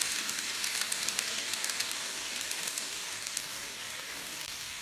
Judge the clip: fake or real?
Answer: fake